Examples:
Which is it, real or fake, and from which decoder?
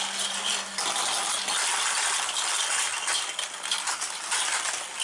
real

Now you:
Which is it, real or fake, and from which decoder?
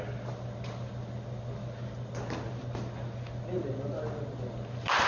real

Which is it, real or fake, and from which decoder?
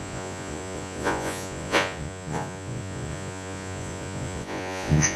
fake, vocoder, Vocos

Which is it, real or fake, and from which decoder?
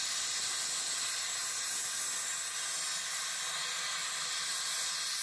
real